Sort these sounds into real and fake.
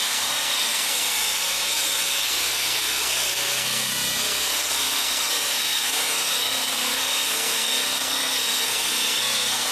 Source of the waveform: fake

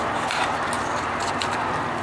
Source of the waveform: fake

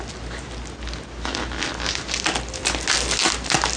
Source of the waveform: real